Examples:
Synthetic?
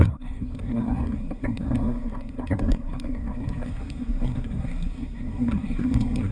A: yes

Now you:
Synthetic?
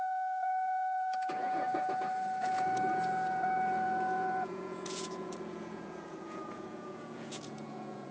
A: yes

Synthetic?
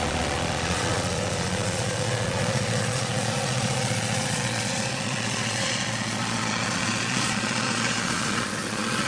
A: yes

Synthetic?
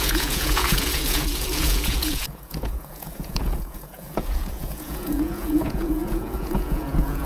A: yes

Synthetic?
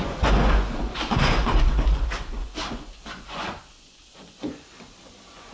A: yes